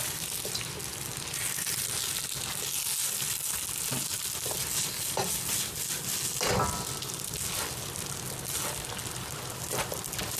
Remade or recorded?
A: recorded